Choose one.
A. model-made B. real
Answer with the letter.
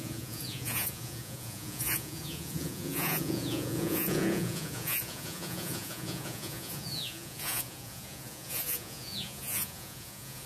A